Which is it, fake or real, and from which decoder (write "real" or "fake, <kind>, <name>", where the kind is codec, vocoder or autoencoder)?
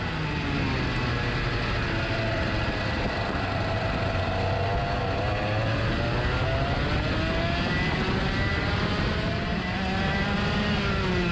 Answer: real